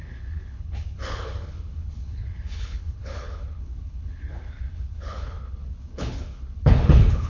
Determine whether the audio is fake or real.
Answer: fake